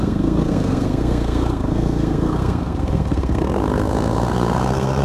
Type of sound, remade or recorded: remade